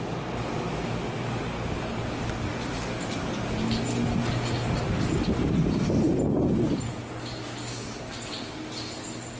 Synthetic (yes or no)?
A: no